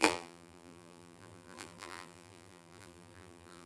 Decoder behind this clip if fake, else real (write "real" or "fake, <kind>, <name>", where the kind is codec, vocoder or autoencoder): fake, vocoder, BigVGAN v2